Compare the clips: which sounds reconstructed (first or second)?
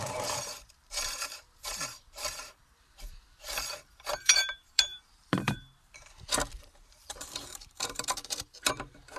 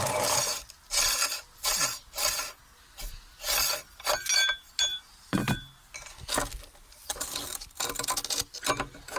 first